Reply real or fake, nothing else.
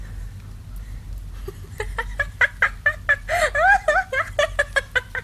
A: real